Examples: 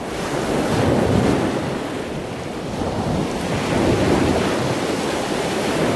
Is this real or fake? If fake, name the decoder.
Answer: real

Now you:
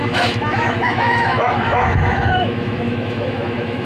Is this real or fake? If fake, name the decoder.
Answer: fake, autoencoder, DAC-VAE